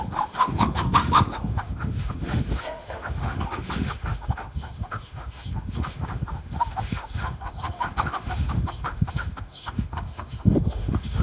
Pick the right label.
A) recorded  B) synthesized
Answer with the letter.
B